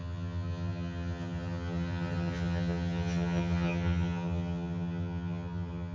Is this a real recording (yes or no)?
no